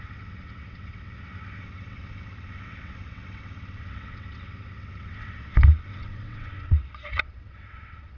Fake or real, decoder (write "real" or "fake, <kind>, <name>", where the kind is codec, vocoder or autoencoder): fake, vocoder, WaveNeXt